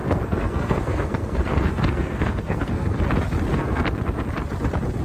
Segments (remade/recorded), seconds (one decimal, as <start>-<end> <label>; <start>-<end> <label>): 0.0-3.0 remade; 3.0-3.5 recorded; 3.5-4.0 remade; 4.0-5.0 recorded